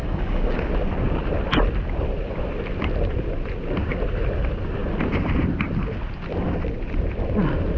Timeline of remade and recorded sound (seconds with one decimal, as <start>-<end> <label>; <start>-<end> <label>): 0.0-0.7 remade; 0.7-7.8 recorded